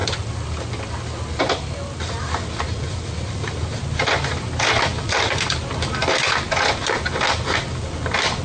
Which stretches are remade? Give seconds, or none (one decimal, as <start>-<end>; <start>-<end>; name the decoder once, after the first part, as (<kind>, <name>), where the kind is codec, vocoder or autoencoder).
4.9-6.1 (vocoder, BigVGAN v2)